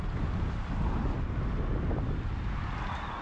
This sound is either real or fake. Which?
real